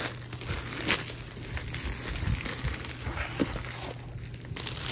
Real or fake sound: real